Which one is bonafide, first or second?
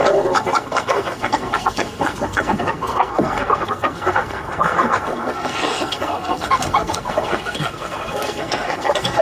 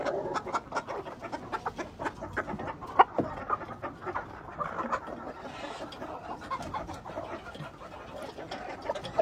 second